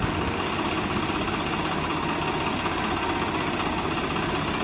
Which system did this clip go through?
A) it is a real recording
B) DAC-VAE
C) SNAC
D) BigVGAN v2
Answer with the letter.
A